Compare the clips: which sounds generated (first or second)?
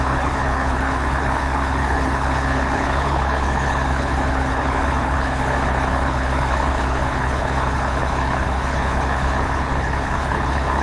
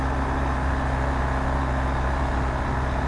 first